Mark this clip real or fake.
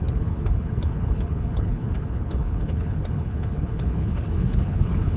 fake